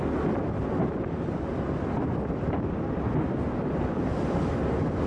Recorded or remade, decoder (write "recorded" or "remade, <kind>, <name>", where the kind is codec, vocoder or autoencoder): recorded